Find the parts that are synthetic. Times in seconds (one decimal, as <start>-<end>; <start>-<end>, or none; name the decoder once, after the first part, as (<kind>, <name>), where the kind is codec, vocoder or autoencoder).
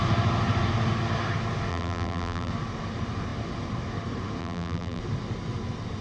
1.7-2.5 (vocoder, BigVGAN v2); 4.4-5.0